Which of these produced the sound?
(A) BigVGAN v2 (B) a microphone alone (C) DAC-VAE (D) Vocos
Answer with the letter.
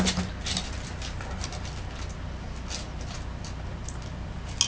B